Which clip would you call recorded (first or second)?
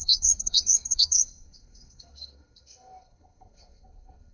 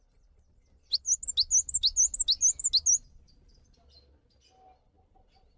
second